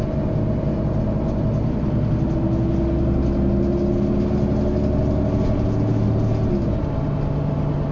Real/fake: real